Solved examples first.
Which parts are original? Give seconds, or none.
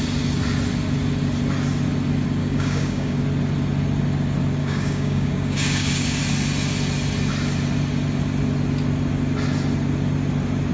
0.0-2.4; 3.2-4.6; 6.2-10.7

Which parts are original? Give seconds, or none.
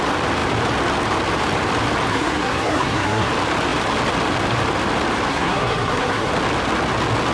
0.0-2.1; 3.3-5.3; 6.3-7.3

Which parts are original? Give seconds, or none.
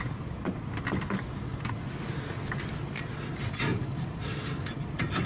0.0-3.7; 4.3-5.3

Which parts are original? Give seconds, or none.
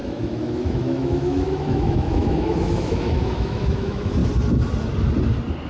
4.2-5.7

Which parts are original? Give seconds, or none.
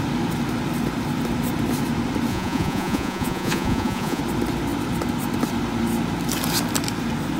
0.0-2.3; 4.2-7.4